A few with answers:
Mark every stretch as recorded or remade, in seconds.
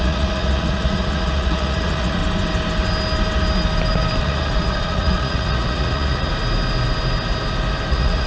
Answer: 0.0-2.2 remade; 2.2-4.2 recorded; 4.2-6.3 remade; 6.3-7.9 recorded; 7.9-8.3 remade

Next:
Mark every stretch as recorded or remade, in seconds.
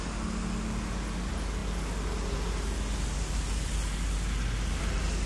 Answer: 0.0-5.3 recorded